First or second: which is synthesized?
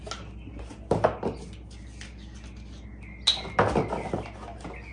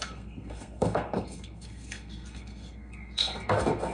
second